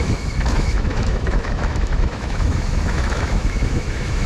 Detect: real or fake fake